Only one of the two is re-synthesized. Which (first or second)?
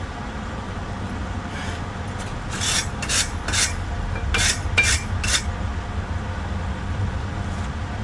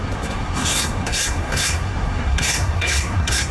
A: second